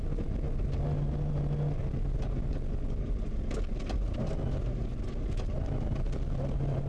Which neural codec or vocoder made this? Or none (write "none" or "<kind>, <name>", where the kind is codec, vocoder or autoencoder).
none